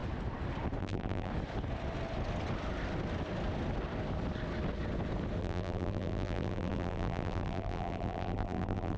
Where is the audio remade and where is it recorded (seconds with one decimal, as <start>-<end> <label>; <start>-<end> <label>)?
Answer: 0.0-0.8 recorded; 0.8-1.3 remade; 1.3-5.4 recorded; 5.4-9.0 remade